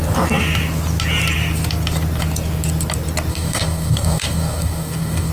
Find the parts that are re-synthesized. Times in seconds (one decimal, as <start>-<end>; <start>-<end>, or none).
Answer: 3.3-5.3